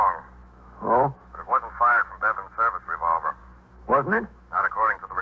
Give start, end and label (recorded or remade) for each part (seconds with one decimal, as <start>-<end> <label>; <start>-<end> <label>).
0.0-0.4 recorded; 0.4-2.2 remade; 2.2-3.4 recorded; 3.4-5.2 remade